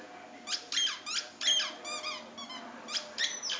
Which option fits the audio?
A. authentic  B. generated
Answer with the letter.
A